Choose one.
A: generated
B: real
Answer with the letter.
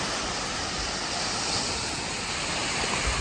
B